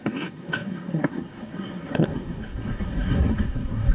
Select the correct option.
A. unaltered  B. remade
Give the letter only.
B